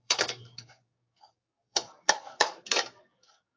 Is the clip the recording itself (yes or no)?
no